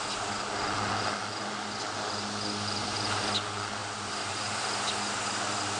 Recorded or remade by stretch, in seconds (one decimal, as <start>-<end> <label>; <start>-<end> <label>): 0.0-5.8 recorded